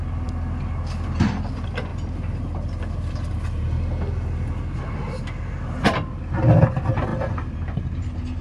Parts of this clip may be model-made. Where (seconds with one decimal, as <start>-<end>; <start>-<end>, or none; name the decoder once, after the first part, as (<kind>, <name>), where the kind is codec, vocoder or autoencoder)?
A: none